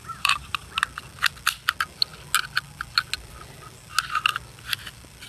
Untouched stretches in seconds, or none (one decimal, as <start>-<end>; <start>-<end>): 0.7-5.3